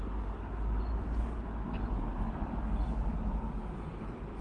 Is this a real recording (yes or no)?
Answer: yes